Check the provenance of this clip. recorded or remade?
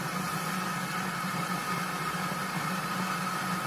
recorded